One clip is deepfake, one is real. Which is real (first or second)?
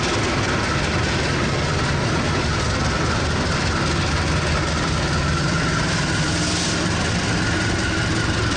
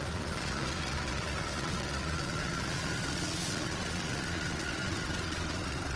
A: first